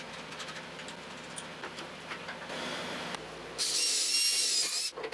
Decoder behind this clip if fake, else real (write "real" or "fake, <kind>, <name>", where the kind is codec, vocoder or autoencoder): real